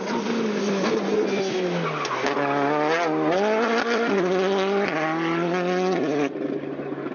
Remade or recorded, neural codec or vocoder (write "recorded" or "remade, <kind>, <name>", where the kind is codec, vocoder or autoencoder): recorded